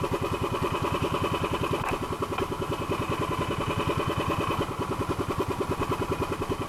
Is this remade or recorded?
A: recorded